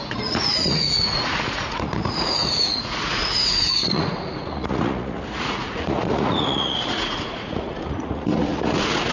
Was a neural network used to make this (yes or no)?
yes